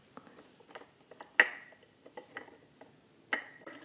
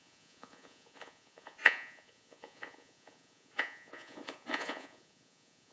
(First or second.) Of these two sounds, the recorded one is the first